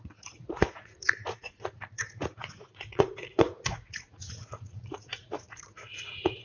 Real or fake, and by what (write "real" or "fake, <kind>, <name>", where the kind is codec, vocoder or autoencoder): fake, vocoder, Vocos